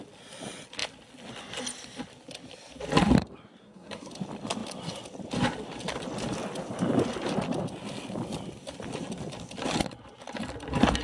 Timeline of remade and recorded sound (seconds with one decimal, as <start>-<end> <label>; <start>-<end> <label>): 0.0-3.6 recorded; 3.6-4.1 remade; 4.1-11.0 recorded